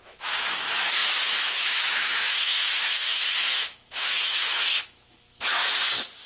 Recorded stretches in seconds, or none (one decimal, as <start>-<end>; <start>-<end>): 5.6-6.3